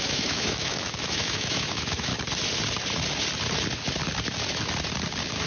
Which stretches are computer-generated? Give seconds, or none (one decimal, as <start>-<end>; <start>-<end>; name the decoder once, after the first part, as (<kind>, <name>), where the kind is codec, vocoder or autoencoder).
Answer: 0.0-2.1 (autoencoder, DAC-VAE)